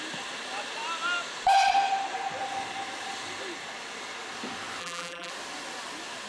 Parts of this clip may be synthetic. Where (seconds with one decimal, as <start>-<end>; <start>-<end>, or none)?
4.8-5.3